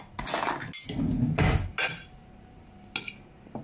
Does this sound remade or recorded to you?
recorded